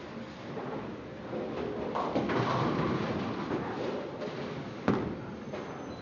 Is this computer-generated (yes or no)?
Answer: no